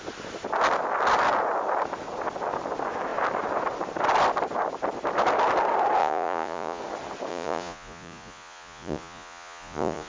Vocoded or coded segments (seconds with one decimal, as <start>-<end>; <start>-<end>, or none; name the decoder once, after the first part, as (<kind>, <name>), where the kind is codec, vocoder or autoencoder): 6.0-6.8 (vocoder, Vocos); 7.3-10.1